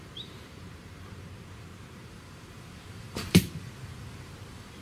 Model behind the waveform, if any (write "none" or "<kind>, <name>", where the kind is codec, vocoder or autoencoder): vocoder, BigVGAN v2